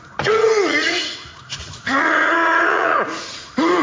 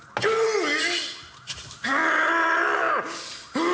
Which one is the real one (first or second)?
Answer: second